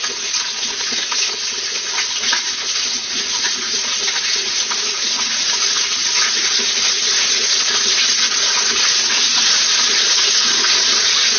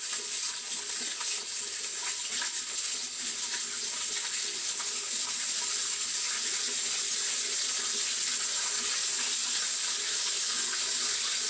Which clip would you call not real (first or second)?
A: first